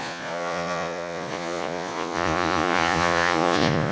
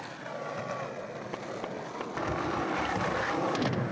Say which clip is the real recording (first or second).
second